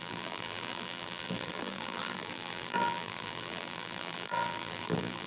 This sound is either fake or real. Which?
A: fake